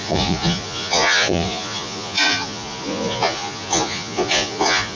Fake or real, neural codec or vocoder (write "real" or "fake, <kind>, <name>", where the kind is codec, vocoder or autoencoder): fake, vocoder, Vocos